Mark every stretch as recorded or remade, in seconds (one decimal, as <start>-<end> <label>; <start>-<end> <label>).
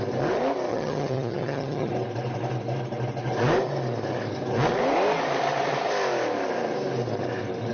0.0-0.7 recorded; 0.7-1.9 remade; 1.9-7.7 recorded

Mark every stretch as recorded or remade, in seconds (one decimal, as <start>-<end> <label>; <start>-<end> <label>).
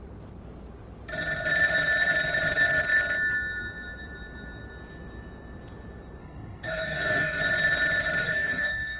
0.0-6.2 recorded; 6.2-7.4 remade; 7.4-8.2 recorded; 8.2-9.0 remade